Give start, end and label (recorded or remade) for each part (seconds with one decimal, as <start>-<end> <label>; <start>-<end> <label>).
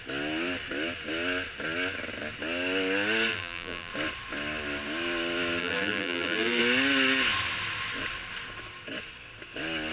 0.0-3.3 recorded; 3.3-3.9 remade; 3.9-5.6 recorded; 5.6-6.6 remade; 6.6-9.9 recorded